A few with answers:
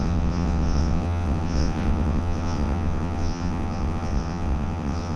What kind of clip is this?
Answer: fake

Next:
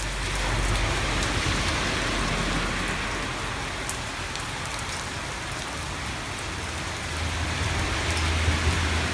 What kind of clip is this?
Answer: real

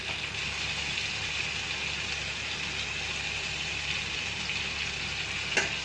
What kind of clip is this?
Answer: real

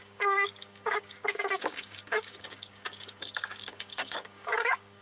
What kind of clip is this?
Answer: fake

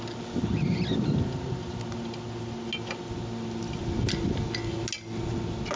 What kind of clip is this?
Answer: real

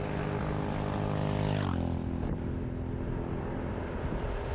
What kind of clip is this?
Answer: real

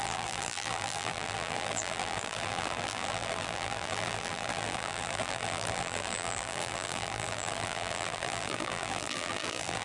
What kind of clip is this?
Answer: fake